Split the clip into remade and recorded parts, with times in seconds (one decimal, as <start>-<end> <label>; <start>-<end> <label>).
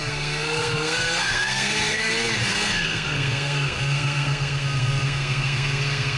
0.0-2.1 remade; 2.1-2.5 recorded; 2.5-6.2 remade